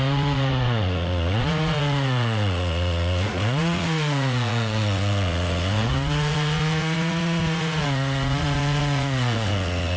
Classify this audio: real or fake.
fake